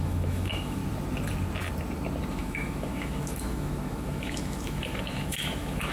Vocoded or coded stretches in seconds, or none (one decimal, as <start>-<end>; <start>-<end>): 0.0-0.8; 2.3-5.9